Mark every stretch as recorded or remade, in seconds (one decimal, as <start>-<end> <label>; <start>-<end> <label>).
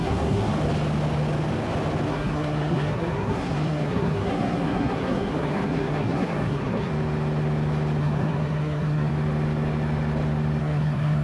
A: 0.0-0.5 remade; 0.5-2.1 recorded; 2.1-6.9 remade; 6.9-8.0 recorded; 8.0-9.1 remade; 9.1-10.6 recorded; 10.6-11.2 remade